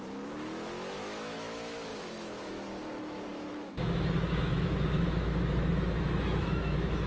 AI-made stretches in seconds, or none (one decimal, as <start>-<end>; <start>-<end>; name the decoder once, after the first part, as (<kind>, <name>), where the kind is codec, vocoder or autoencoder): 0.0-7.1 (autoencoder, DAC-VAE)